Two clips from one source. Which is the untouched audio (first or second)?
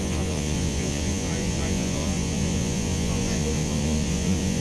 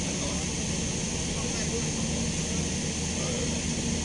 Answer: second